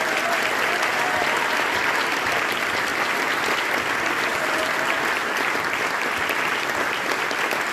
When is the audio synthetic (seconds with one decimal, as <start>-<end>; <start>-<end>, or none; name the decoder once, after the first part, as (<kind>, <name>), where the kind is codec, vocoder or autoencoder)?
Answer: none